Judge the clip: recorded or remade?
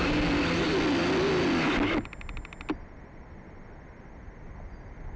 recorded